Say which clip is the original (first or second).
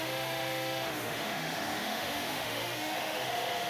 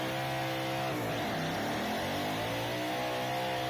second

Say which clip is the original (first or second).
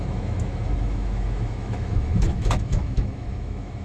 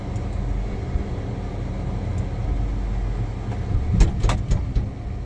second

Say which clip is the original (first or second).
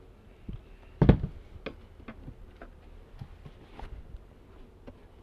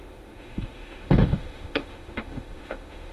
first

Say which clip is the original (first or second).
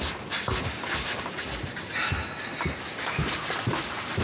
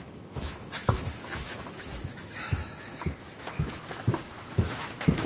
first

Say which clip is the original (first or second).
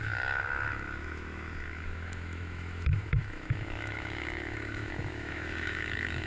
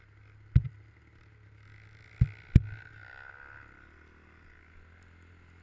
second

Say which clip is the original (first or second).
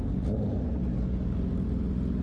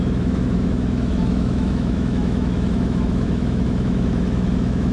first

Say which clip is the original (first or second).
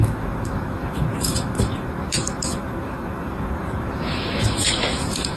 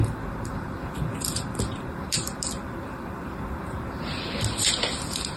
second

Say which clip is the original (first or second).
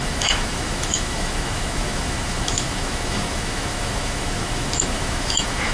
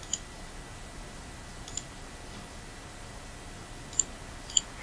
second